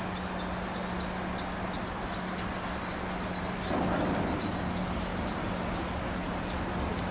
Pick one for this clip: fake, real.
real